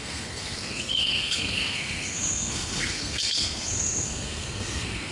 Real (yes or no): no